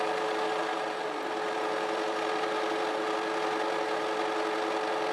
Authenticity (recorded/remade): recorded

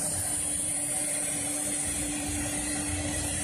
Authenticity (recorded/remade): remade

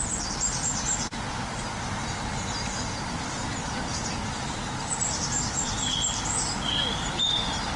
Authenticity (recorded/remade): remade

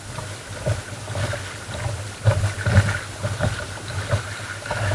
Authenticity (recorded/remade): recorded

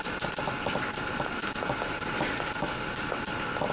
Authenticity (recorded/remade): remade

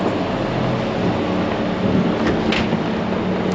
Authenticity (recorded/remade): recorded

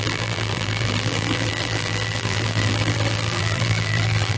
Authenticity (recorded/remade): remade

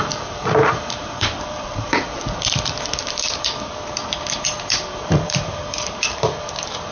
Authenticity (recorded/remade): remade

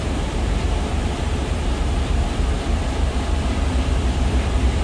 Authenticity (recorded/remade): remade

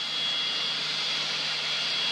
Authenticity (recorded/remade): recorded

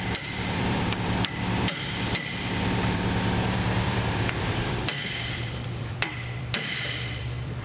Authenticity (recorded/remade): remade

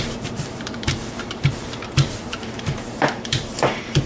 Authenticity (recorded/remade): remade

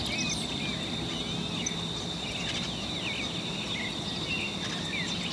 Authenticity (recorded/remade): recorded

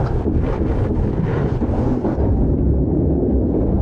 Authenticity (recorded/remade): recorded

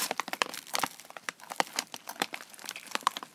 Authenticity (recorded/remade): remade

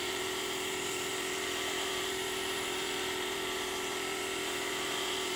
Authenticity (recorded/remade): remade